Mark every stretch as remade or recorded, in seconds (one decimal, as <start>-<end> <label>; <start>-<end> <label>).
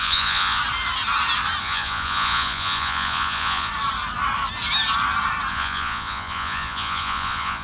0.0-0.6 remade; 0.6-1.6 recorded; 1.6-3.7 remade; 3.7-5.5 recorded; 5.5-7.6 remade